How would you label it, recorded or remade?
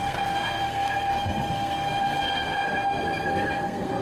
remade